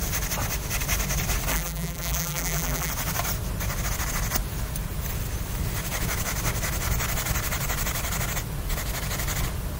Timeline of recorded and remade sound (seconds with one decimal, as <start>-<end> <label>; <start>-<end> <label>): 0.0-1.5 recorded; 1.5-2.9 remade; 2.9-9.8 recorded